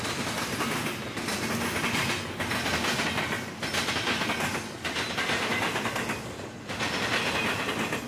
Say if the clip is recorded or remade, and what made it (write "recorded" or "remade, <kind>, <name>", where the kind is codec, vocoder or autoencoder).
recorded